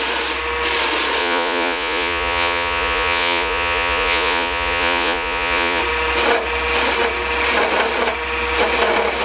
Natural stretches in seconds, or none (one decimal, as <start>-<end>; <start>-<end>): 0.0-1.2; 5.8-9.2